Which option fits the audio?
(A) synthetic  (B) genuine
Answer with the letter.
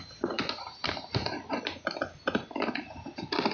B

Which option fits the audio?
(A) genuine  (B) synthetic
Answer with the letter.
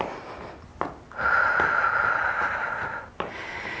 A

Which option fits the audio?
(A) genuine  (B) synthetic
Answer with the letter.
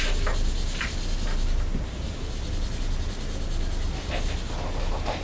A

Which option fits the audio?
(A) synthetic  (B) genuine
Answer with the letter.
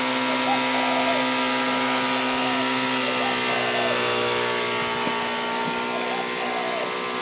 B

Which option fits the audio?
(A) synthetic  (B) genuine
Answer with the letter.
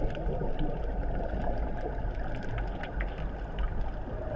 B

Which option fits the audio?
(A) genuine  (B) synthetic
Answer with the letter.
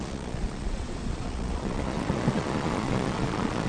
B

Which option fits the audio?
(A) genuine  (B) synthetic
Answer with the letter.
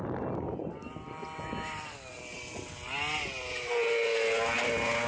A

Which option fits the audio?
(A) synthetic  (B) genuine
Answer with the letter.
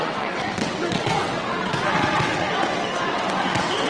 A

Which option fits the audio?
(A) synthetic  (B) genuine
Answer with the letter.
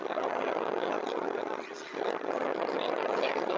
A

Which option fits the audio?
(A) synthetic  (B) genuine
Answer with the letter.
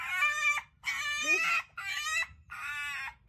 B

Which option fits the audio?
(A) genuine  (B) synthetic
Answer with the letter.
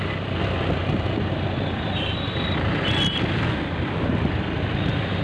A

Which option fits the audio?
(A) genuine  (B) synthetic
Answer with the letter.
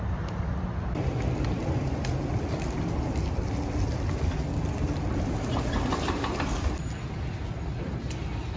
A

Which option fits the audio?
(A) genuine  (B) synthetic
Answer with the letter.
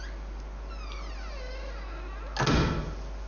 A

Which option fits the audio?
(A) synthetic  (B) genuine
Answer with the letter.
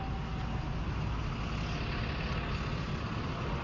B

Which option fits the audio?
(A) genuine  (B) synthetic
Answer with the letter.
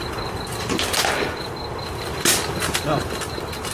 A